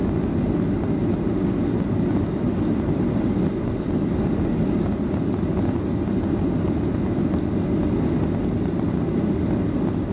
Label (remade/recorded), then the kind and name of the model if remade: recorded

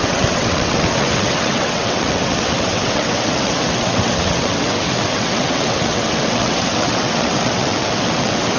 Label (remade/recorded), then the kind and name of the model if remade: remade, vocoder, WaveNeXt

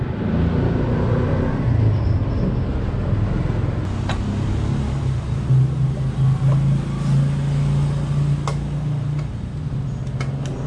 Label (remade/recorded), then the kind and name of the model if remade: recorded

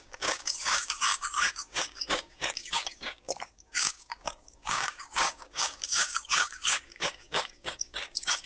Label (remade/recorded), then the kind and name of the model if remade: remade, codec, DAC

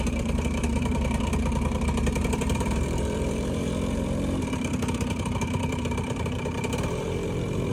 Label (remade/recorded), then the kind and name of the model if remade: remade, vocoder, BigVGAN v2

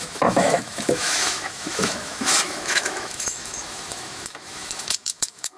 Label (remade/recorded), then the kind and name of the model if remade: remade, autoencoder, DAC-VAE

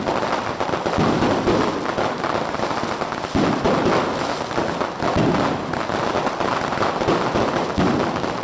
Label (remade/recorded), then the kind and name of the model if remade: recorded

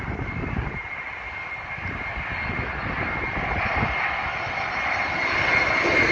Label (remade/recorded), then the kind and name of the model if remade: recorded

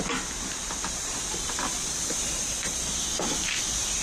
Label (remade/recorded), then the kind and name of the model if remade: recorded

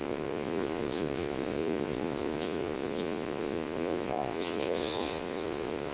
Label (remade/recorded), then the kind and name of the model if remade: remade, vocoder, Vocos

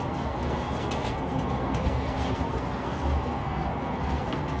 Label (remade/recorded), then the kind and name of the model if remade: remade, codec, SNAC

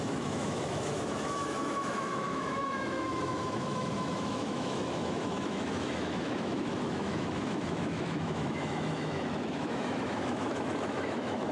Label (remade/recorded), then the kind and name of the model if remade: remade, autoencoder, DAC-VAE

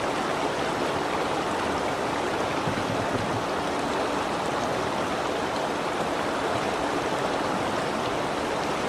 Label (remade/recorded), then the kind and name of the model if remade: recorded